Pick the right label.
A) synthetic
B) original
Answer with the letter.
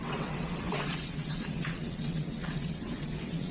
A